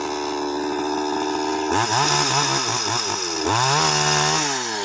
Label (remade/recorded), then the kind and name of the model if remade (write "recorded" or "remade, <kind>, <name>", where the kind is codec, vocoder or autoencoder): recorded